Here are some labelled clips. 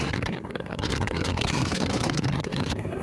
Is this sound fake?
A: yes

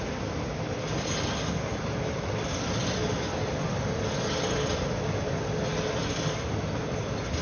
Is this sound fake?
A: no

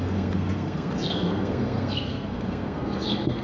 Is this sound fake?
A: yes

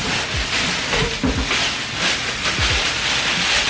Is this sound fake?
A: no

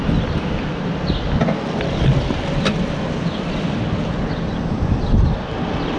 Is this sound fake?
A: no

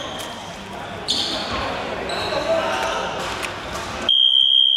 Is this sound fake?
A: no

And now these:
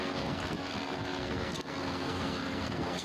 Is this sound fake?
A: yes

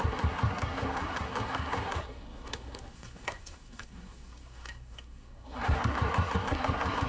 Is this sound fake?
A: yes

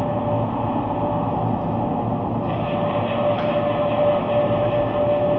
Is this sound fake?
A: no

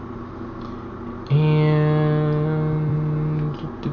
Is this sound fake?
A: no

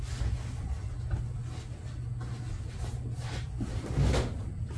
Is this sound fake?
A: no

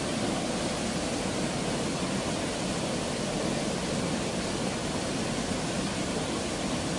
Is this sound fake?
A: no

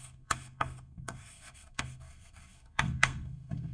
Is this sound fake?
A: yes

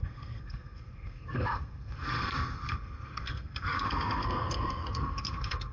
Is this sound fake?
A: yes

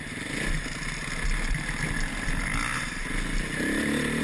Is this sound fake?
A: no